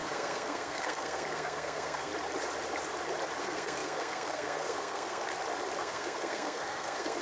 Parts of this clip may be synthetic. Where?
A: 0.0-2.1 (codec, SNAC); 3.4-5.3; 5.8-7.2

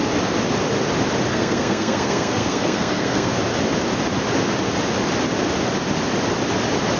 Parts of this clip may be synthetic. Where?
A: 1.3-3.4 (codec, SNAC)

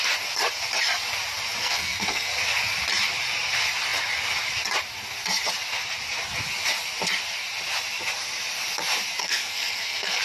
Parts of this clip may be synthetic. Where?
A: 1.6-2.3 (codec, SNAC); 9.2-10.2